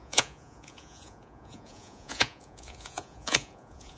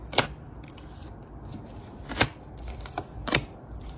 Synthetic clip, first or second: first